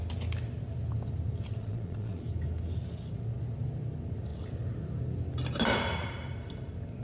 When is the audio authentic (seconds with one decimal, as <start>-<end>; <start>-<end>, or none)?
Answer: 0.0-1.6; 2.2-7.0